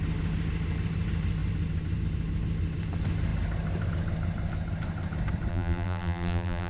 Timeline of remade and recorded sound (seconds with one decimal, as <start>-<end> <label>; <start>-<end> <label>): 0.0-5.5 recorded; 5.5-6.7 remade